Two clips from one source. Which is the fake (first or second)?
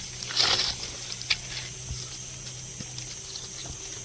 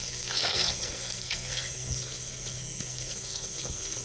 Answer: second